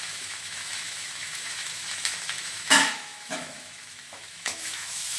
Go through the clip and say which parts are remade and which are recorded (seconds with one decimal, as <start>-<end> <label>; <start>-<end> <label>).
0.0-5.2 remade